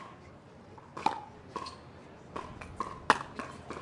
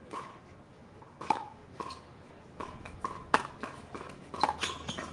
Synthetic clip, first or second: second